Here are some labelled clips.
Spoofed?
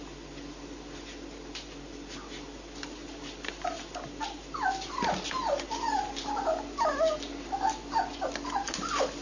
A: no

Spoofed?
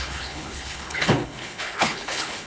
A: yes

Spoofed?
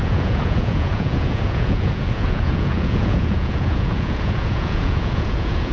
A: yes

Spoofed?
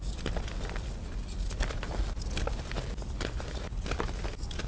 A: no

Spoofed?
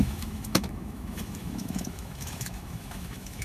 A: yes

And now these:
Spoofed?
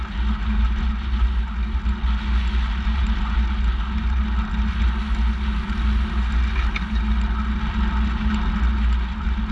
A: no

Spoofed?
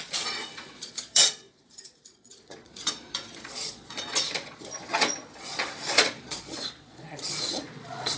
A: yes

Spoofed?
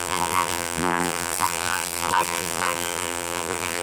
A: yes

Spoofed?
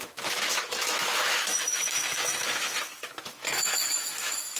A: yes